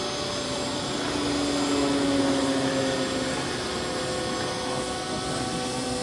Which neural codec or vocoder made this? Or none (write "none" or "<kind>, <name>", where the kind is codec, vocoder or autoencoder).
none